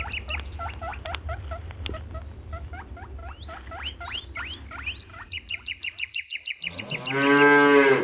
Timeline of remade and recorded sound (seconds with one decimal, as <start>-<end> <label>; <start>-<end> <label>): 0.0-5.1 recorded; 5.1-6.8 remade; 6.8-8.0 recorded